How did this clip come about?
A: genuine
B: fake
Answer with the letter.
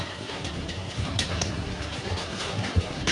B